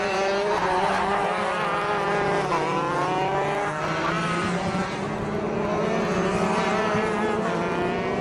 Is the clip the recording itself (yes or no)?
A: yes